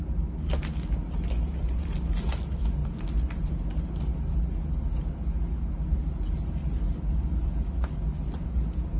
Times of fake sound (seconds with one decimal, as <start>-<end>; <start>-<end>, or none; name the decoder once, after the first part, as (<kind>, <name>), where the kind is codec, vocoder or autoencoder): none